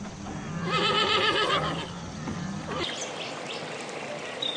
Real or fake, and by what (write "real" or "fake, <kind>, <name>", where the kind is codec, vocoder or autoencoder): real